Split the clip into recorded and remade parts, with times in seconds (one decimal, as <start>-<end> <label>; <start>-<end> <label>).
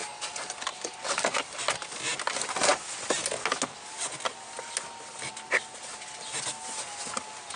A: 0.0-7.6 recorded